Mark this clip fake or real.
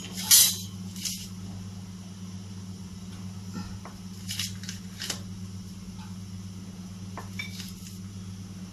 real